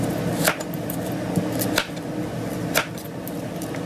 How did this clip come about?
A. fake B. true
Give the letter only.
B